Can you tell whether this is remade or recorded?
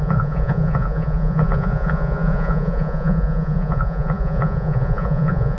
remade